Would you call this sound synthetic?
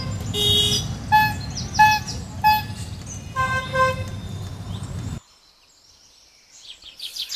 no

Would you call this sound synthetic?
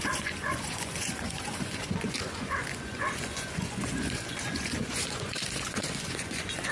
yes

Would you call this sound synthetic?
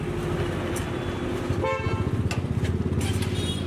no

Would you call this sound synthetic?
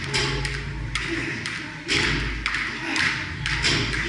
no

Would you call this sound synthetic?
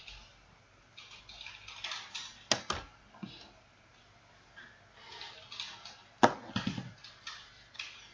no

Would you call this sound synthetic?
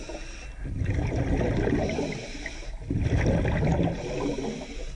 no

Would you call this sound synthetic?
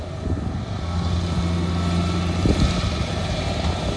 no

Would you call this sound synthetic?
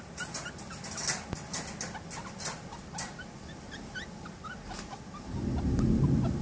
no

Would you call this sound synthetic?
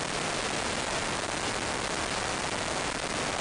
no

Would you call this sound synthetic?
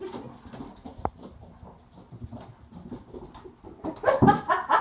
no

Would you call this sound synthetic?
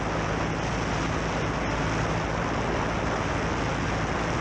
no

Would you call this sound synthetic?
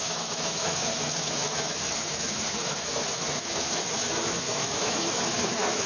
yes